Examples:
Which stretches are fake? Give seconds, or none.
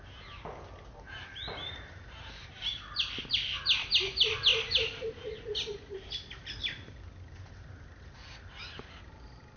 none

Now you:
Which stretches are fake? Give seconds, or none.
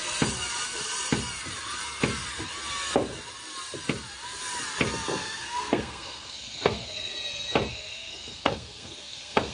5.2-7.1 (codec, SNAC); 7.7-9.5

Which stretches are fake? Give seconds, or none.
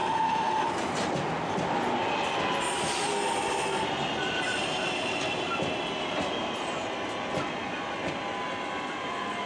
none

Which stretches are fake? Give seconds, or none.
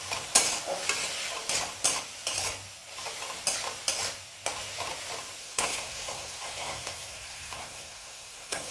5.4-8.7 (codec, SNAC)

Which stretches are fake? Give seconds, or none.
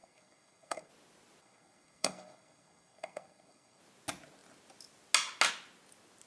0.0-0.9 (codec, SNAC); 1.4-3.8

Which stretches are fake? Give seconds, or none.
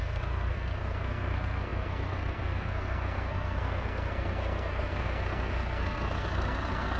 0.0-7.0 (codec, SNAC)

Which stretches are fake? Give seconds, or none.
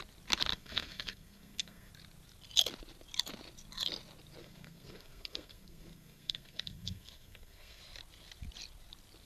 0.5-1.9 (codec, SNAC); 4.4-7.8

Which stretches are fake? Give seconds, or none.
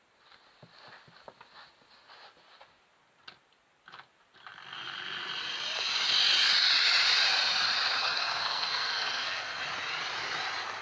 8.0-9.6 (codec, SNAC)